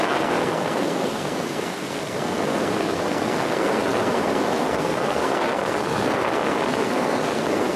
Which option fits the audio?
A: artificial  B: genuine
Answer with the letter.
A